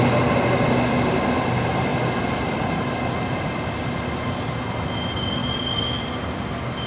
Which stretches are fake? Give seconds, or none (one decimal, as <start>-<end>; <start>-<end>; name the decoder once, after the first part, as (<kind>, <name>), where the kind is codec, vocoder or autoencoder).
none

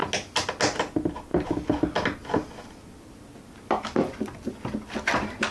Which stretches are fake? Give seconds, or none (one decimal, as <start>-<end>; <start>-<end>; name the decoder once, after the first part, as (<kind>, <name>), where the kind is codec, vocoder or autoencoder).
none

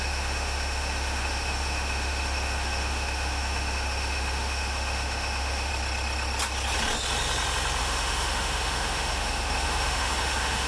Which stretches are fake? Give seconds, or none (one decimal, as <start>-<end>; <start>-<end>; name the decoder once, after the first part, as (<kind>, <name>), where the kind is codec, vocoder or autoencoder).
0.0-5.7 (autoencoder, DAC-VAE); 7.8-10.7

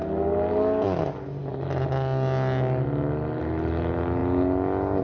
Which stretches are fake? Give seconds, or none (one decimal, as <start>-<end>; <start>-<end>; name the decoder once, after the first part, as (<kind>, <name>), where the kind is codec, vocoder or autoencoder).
none